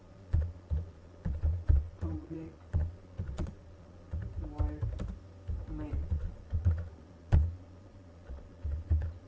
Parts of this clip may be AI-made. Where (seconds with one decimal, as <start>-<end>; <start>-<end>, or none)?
0.0-4.2; 5.9-9.3